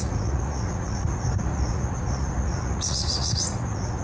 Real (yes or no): no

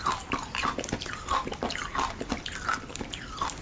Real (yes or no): yes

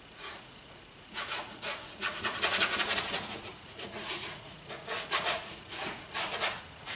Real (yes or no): no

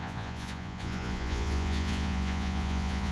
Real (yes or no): no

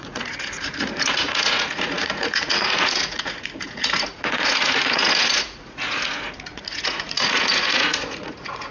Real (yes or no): no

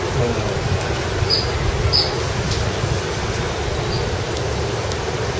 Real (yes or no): yes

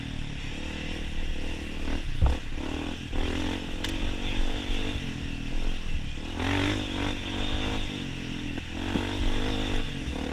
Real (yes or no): yes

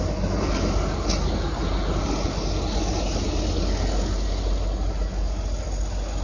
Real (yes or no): yes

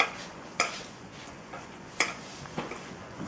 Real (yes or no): no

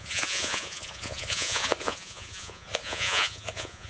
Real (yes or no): no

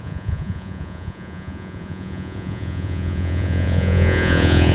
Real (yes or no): no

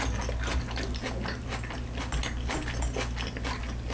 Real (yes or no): yes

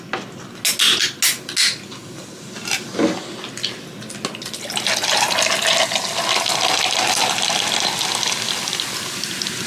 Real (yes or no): yes